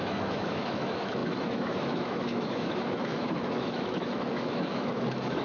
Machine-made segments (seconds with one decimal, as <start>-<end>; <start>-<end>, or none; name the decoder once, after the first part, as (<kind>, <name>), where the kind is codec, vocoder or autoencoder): 0.0-5.4 (autoencoder, DAC-VAE)